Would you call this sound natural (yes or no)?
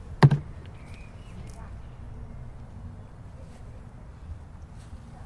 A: yes